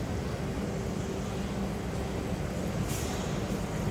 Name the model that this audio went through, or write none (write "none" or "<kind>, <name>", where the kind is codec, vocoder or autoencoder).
none